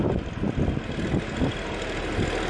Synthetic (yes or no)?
no